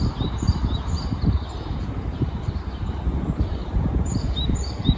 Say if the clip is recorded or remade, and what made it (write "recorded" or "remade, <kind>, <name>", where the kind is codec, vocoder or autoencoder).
remade, vocoder, BigVGAN v2